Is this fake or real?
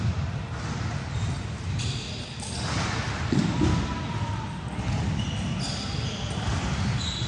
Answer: real